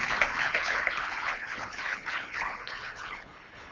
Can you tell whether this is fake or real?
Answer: fake